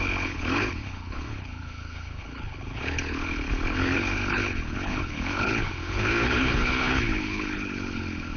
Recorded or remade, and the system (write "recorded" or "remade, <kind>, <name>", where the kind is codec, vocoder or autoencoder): remade, codec, HILCodec